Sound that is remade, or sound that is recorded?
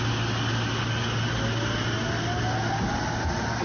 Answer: recorded